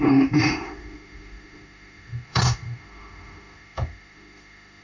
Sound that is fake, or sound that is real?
fake